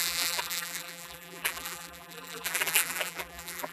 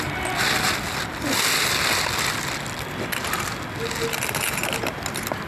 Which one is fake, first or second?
first